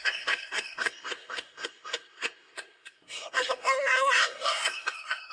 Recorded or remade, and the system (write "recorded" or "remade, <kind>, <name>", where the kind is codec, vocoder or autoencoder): remade, codec, SNAC